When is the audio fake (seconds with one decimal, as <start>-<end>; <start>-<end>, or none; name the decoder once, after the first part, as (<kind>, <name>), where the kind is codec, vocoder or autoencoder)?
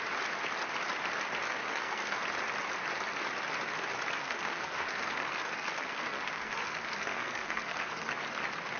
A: 1.6-2.2 (codec, SNAC); 4.2-8.1